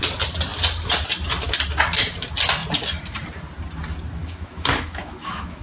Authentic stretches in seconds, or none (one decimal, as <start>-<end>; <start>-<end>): 0.0-4.2